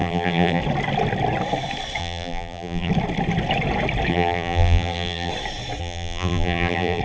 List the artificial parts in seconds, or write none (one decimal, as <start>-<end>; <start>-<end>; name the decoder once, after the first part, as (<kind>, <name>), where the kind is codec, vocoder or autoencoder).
0.0-0.6 (vocoder, BigVGAN v2); 2.0-2.9; 4.1-5.3; 5.8-7.0